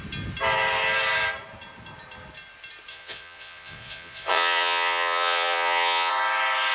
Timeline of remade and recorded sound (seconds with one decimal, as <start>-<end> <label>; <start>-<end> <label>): 0.0-2.9 recorded; 2.9-6.1 remade; 6.1-6.7 recorded